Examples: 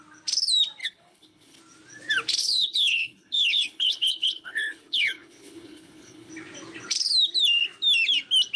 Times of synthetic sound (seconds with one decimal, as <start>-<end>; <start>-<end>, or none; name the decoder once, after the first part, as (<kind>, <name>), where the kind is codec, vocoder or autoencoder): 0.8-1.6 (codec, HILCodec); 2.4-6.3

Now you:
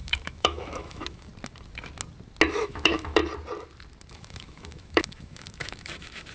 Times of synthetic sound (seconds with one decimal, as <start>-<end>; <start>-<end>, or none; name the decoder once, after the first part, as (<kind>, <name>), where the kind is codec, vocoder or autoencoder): 0.0-1.3 (autoencoder, DAC-VAE); 2.5-3.2; 4.1-6.3

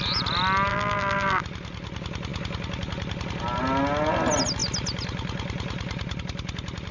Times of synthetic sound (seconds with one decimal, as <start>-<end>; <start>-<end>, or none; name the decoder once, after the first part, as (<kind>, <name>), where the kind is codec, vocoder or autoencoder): 0.7-1.4 (vocoder, BigVGAN v2)

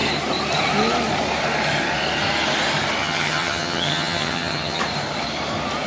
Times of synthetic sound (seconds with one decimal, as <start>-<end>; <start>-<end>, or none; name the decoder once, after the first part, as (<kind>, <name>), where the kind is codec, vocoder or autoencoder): 3.0-4.8 (vocoder, HiFi-GAN)

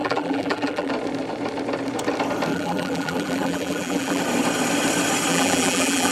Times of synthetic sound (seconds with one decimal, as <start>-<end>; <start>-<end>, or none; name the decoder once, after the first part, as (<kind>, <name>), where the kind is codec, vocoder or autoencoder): 0.0-0.9 (vocoder, BigVGAN v2); 2.5-4.2; 5.3-6.1